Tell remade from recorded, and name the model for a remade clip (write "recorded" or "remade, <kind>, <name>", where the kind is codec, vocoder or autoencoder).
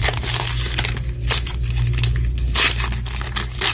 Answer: recorded